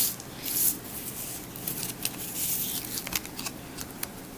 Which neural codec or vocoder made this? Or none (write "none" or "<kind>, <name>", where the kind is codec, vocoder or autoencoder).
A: none